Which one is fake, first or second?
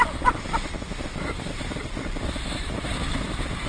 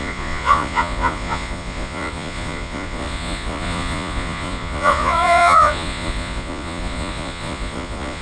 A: second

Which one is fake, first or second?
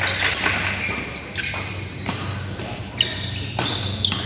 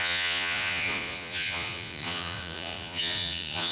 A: second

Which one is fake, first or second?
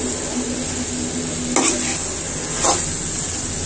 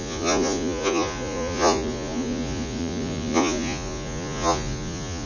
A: second